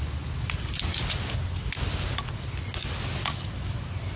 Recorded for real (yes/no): yes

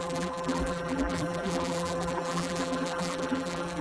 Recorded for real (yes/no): no